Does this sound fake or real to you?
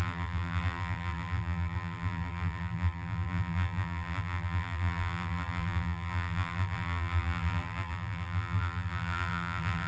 fake